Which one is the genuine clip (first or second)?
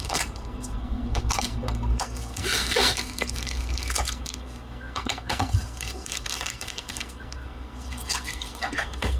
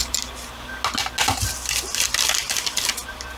second